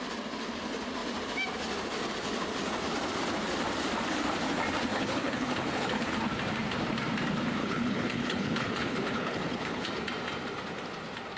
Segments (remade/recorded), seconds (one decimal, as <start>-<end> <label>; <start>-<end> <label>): 0.0-4.9 recorded; 4.9-6.1 remade; 6.1-7.6 recorded; 7.6-9.9 remade; 9.9-11.4 recorded